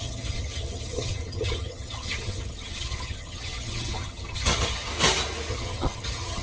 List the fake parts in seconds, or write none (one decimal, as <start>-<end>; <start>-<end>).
0.0-4.9; 5.5-6.4